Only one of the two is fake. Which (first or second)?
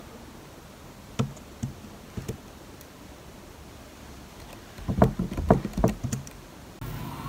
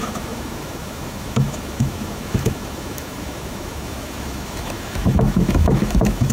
second